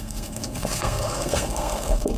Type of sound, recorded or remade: remade